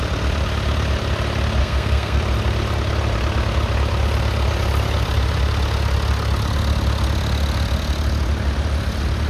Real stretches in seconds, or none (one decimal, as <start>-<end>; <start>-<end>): 0.0-1.6; 2.2-9.3